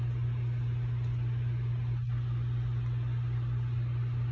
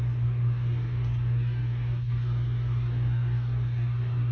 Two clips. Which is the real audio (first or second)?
first